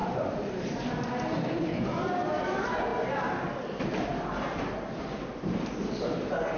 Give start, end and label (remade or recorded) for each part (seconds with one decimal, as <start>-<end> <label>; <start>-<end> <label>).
0.0-6.6 recorded